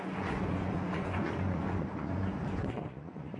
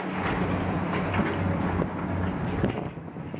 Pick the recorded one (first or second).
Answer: second